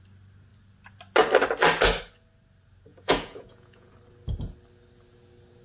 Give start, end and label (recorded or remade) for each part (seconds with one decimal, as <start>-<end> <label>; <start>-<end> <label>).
0.0-2.9 recorded; 2.9-3.9 remade; 3.9-5.6 recorded